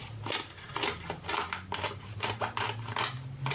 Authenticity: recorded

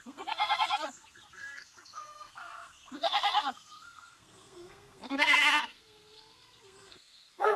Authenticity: remade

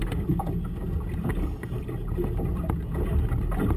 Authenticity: recorded